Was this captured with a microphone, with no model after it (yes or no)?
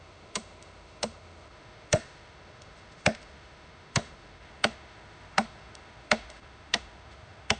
no